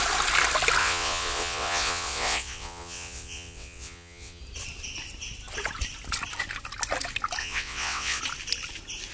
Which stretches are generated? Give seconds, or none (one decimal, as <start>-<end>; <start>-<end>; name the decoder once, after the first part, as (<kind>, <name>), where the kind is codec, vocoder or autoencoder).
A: 0.8-4.4 (vocoder, WaveNeXt); 7.4-8.2